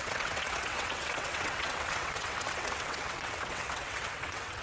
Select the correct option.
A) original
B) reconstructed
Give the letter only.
B